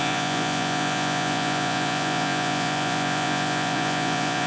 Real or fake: fake